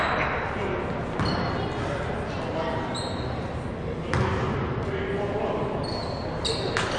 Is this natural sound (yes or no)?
yes